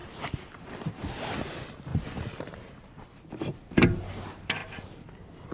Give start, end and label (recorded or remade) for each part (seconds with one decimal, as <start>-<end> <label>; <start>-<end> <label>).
0.0-1.9 recorded; 1.9-4.0 remade; 4.0-4.6 recorded; 4.6-5.1 remade; 5.1-5.5 recorded